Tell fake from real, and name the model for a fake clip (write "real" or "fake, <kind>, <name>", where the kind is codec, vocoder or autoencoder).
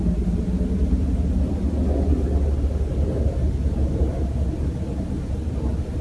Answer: real